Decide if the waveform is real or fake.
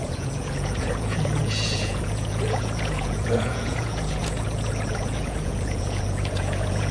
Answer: fake